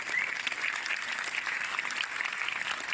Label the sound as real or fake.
real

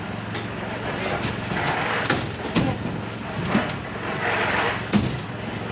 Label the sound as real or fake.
real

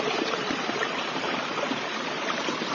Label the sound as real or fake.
fake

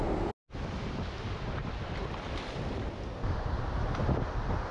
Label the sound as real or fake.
real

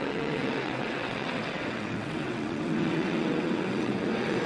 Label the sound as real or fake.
fake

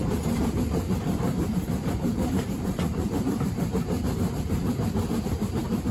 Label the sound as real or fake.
fake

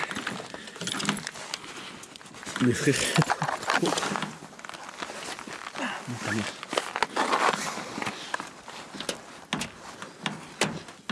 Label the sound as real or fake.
real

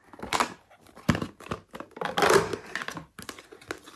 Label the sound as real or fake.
real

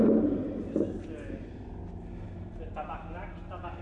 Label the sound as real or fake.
real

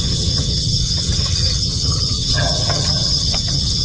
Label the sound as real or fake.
fake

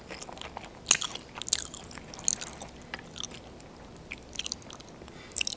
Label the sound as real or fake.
real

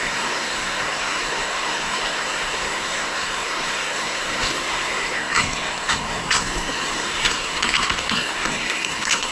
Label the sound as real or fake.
fake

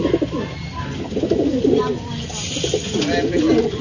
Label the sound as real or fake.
real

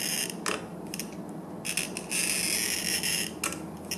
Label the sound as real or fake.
real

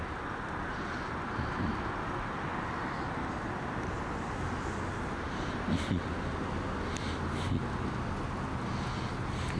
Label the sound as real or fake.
real